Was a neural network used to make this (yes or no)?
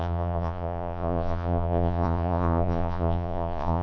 yes